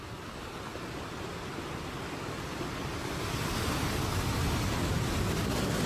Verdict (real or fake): real